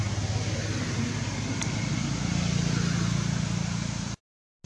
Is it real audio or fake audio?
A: real